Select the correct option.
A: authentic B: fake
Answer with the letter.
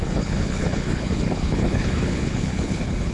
B